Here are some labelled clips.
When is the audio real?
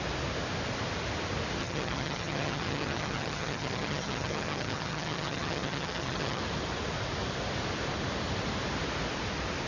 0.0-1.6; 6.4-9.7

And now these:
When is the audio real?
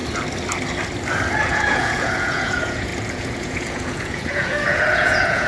0.0-1.5